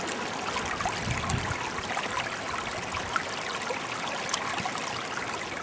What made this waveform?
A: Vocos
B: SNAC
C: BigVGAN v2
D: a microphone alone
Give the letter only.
D